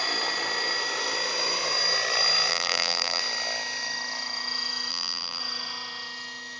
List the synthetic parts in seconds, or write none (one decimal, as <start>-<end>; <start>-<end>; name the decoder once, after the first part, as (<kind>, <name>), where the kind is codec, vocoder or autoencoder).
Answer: 2.5-3.2 (vocoder, BigVGAN v2); 4.9-5.4